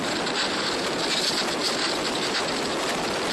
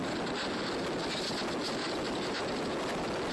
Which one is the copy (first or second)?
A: first